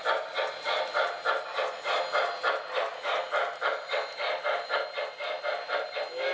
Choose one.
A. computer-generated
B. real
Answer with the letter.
B